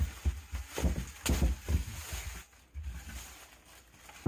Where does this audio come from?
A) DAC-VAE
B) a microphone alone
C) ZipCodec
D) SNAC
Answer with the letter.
B